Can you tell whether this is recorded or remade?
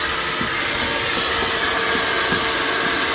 recorded